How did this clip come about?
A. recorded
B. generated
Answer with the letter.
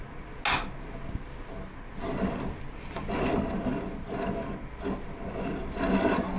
A